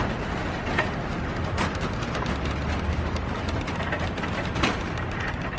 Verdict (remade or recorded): recorded